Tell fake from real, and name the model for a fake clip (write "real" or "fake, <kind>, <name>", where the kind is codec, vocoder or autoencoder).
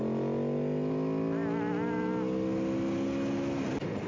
real